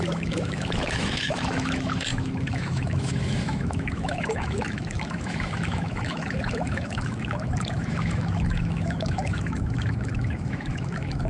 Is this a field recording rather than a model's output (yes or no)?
no